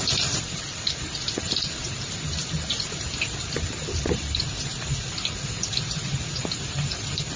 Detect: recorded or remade recorded